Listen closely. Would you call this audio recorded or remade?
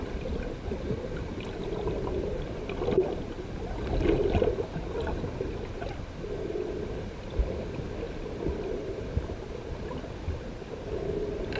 recorded